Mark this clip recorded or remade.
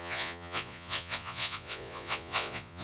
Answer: remade